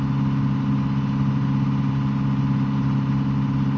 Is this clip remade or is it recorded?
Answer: recorded